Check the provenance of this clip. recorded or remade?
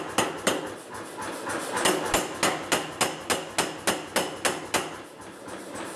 recorded